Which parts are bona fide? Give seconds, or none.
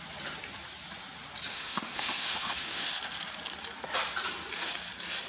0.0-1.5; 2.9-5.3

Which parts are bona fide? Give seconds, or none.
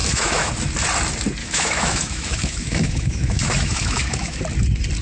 0.5-1.4; 4.4-5.0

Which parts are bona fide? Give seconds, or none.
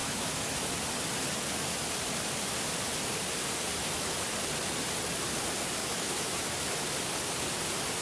0.7-5.8; 6.5-8.0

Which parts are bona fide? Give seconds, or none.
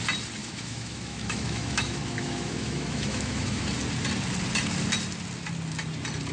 0.0-0.4; 3.7-6.3